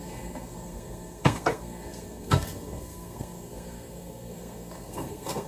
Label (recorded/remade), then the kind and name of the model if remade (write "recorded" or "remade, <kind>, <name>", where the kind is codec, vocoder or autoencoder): remade, codec, SNAC